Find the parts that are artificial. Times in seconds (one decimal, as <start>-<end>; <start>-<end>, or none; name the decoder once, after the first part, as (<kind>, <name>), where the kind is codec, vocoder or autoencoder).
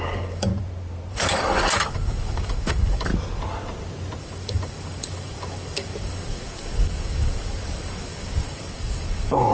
0.0-0.5 (codec, DAC); 1.1-3.1; 4.2-9.5